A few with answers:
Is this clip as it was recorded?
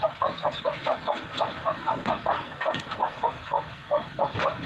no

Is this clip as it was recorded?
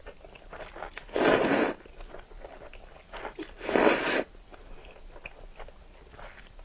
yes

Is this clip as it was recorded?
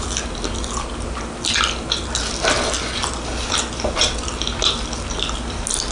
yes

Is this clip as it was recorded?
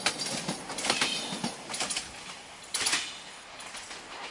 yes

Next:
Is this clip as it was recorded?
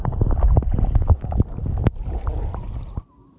yes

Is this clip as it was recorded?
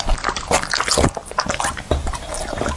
yes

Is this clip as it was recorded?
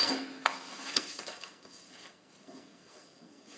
no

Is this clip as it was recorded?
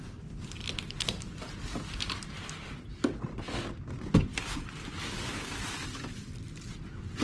yes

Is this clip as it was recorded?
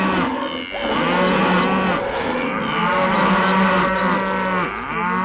yes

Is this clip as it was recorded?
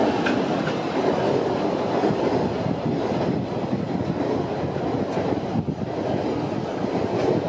yes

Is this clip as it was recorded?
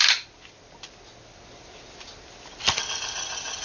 yes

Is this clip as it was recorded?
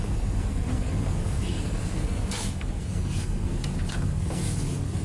no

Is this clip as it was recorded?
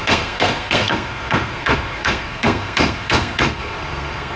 no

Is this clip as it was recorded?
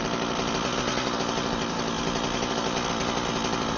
yes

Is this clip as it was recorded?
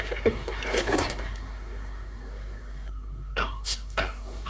no